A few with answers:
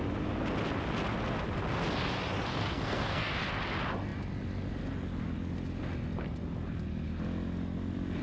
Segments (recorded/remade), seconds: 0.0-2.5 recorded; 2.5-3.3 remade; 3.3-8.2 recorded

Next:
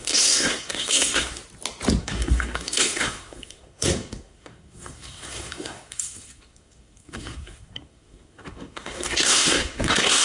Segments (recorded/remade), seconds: 0.0-1.4 remade; 1.4-2.0 recorded; 2.0-10.2 remade

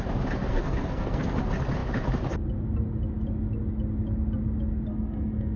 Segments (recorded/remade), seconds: 0.0-0.5 recorded; 0.5-1.4 remade; 1.4-4.9 recorded; 4.9-5.6 remade

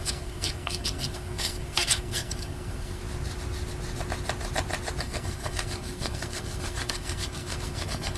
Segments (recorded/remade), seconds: 0.0-3.0 remade; 3.0-5.0 recorded; 5.0-8.2 remade

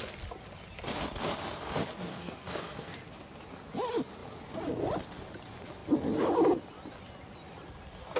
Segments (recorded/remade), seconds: 0.0-2.1 recorded; 2.1-3.0 remade; 3.0-8.2 recorded

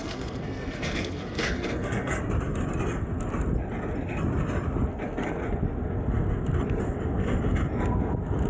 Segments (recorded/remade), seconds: 0.0-2.2 remade; 2.2-8.5 recorded

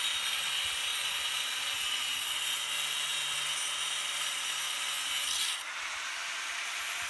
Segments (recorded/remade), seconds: 0.0-7.1 recorded